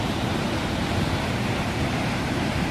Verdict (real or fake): fake